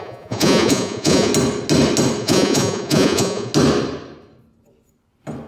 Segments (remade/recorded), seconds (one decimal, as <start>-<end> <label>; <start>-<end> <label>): 0.0-1.3 remade; 1.3-2.2 recorded; 2.2-3.5 remade; 3.5-5.5 recorded